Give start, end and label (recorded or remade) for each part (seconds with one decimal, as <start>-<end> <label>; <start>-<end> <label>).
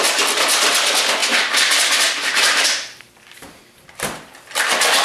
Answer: 0.0-1.2 recorded; 1.2-3.6 remade; 3.6-5.0 recorded